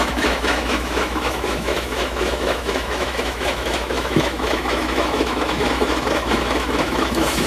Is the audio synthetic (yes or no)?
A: yes